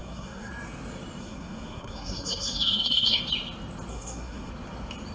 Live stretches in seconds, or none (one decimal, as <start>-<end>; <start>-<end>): 0.5-1.2; 3.2-3.9; 4.5-5.1